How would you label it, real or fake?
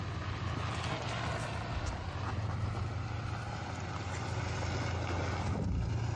real